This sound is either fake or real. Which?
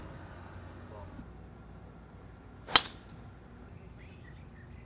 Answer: real